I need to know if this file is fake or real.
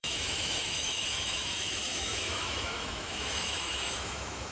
fake